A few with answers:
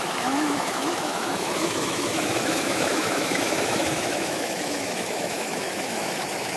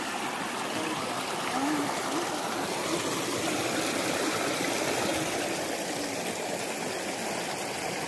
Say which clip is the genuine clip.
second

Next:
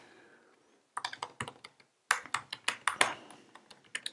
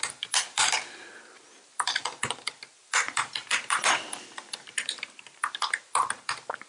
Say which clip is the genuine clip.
first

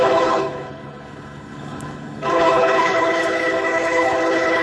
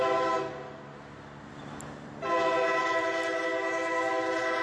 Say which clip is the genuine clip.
second